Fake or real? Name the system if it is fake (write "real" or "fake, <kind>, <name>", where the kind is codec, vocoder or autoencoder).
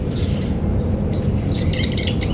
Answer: fake, vocoder, BigVGAN v2